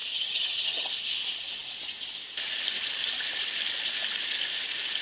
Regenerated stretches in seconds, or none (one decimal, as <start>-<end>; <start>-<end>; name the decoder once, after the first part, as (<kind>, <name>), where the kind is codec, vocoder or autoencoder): 0.0-0.9 (vocoder, HiFi-GAN)